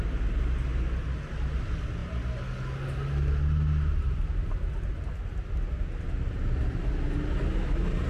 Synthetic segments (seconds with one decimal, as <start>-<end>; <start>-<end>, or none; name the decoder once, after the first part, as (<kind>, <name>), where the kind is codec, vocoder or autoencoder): none